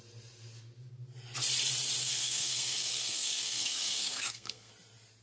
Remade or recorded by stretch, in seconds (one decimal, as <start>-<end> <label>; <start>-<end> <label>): 0.0-2.0 recorded; 2.0-4.7 remade; 4.7-5.2 recorded

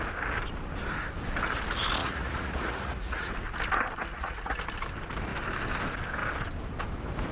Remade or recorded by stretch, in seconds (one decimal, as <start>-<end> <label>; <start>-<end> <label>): 0.0-2.0 recorded; 2.0-3.3 remade; 3.3-4.1 recorded; 4.1-4.6 remade; 4.6-7.3 recorded

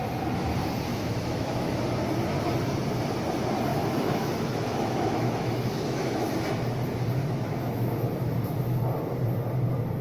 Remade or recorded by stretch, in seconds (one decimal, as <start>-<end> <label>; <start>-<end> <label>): 0.0-0.9 recorded; 0.9-1.8 remade; 1.8-3.7 recorded; 3.7-6.3 remade; 6.3-7.2 recorded; 7.2-8.8 remade; 8.8-10.0 recorded

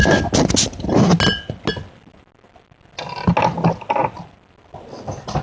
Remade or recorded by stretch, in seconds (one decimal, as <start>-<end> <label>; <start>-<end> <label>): 0.0-5.4 recorded